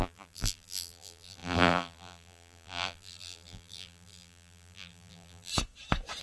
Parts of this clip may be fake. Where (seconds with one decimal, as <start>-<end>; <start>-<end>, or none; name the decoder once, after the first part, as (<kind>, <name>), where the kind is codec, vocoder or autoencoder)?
0.0-5.5 (vocoder, BigVGAN v2)